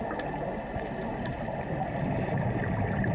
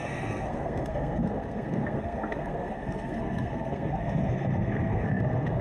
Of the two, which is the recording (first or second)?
first